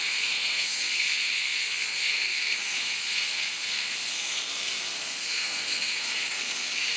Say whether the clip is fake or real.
fake